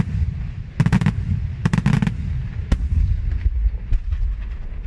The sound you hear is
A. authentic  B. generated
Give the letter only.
A